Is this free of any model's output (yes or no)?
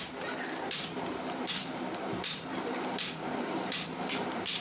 no